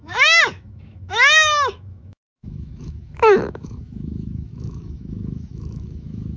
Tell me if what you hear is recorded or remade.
remade